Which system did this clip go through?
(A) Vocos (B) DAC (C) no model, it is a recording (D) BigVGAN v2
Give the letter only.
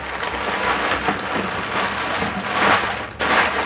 C